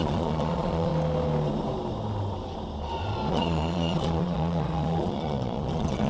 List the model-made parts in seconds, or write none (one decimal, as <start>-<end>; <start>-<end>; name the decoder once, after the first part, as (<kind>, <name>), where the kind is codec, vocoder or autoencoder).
0.0-0.9 (vocoder, Vocos); 3.3-6.1